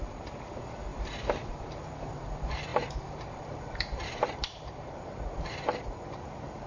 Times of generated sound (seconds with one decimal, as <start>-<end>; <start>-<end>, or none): 0.0-6.7